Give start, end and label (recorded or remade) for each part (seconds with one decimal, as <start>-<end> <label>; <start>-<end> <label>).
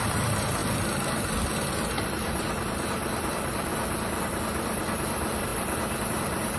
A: 0.0-0.6 remade; 0.6-3.3 recorded; 3.3-3.7 remade; 3.7-4.2 recorded; 4.2-5.5 remade; 5.5-6.1 recorded; 6.1-6.6 remade